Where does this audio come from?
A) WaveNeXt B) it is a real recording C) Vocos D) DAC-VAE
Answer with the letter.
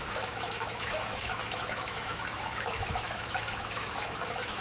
D